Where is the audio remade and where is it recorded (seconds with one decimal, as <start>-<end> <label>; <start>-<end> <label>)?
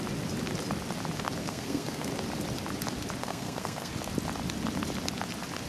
0.0-1.4 recorded; 1.4-2.1 remade; 2.1-3.2 recorded; 3.2-3.9 remade; 3.9-5.7 recorded